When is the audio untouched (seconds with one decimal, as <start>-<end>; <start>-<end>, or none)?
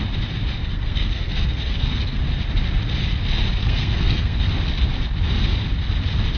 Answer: 0.0-0.6; 2.2-3.6; 4.5-6.4